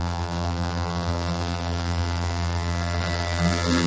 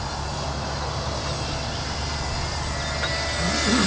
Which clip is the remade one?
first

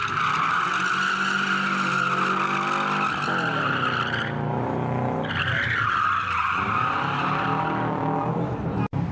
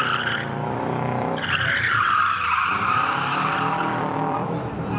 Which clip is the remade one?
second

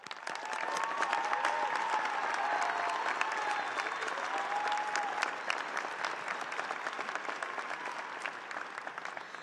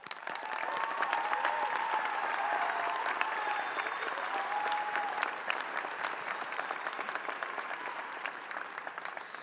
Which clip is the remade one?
second